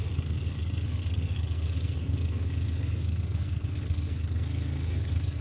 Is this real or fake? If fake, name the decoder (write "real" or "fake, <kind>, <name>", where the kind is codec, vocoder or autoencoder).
fake, codec, SNAC